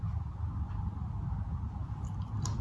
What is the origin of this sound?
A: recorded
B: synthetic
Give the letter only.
A